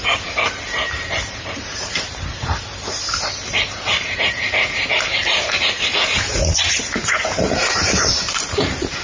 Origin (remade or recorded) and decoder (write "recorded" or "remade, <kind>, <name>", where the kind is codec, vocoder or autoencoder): remade, vocoder, BigVGAN v2